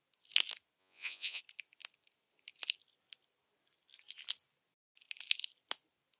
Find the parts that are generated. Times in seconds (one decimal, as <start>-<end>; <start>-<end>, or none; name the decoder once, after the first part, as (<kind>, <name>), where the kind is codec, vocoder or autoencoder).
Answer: 0.8-1.4 (vocoder, Vocos)